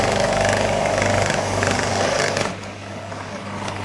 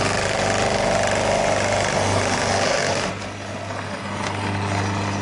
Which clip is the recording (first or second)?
second